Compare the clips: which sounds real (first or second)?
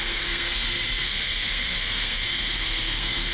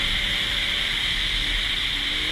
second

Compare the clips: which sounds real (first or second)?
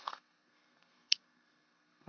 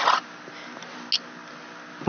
second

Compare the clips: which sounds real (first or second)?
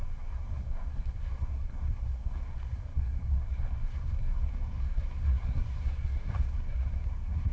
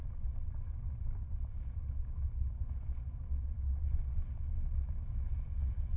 second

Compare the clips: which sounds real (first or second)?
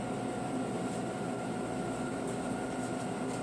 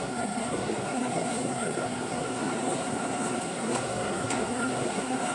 first